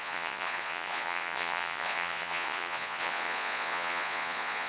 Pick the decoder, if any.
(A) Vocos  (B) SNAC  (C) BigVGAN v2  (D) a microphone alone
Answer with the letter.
A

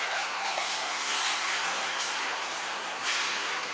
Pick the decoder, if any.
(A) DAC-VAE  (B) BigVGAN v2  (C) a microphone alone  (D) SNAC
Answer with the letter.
D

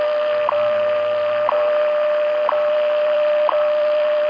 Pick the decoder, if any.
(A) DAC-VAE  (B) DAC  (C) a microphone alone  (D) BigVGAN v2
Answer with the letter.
D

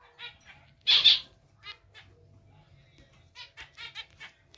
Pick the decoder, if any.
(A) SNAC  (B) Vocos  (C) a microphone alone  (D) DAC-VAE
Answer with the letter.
C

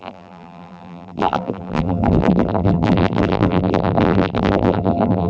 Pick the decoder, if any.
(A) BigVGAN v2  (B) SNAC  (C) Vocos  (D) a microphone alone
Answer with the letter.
A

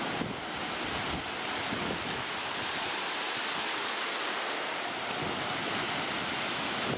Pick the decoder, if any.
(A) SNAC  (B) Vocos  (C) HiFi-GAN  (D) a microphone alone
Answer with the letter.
D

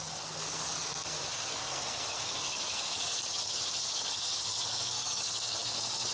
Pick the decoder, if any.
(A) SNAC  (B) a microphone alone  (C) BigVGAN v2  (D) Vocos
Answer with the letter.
A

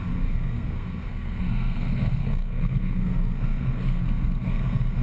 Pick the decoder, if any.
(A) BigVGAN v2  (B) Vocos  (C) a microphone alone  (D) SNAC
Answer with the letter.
D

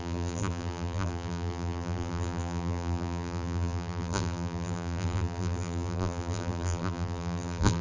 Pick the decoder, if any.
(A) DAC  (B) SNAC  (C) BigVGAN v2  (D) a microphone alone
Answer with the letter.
C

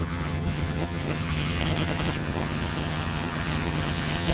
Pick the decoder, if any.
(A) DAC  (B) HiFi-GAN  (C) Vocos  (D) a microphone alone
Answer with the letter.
B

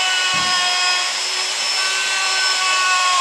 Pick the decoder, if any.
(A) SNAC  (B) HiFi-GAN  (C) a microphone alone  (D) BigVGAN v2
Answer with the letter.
D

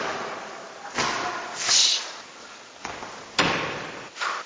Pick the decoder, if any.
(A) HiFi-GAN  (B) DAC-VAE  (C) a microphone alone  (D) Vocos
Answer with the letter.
C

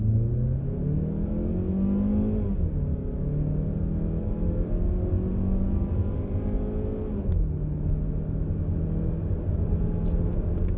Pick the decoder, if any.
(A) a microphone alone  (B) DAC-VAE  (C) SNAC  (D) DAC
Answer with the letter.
A